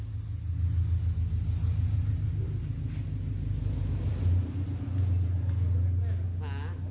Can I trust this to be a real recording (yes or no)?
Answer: yes